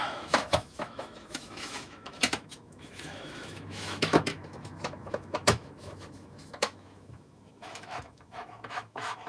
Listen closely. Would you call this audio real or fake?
fake